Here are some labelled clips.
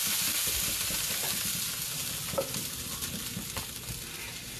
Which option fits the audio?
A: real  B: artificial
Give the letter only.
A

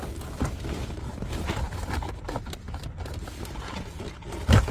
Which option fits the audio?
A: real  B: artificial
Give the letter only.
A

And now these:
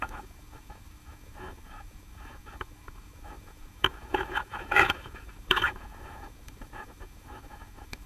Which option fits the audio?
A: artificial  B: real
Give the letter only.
A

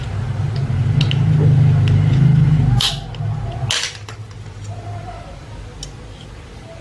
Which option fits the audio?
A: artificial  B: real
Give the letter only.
B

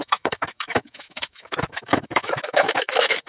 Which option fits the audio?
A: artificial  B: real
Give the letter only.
A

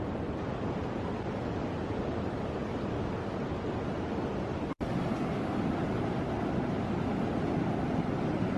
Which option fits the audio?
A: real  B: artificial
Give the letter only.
A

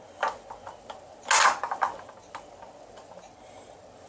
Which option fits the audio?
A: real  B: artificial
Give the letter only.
A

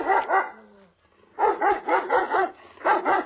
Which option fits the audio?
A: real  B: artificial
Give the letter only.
A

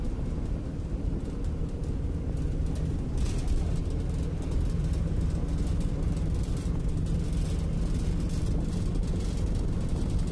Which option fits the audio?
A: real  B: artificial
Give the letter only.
A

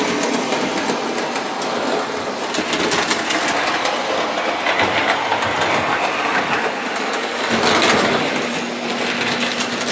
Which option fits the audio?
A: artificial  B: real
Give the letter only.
B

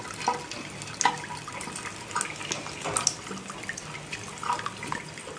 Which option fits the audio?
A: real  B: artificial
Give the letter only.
A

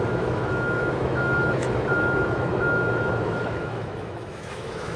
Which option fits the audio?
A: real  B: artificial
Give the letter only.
B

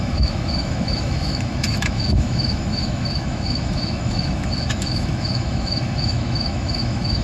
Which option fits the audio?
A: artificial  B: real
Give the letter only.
A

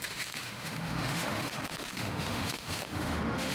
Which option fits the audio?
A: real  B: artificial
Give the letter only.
B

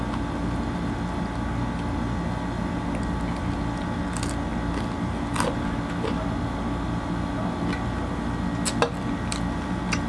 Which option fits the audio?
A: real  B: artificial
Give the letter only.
A